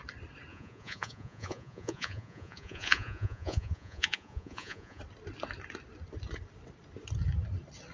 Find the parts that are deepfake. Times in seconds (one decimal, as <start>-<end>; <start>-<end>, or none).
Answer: 0.5-5.0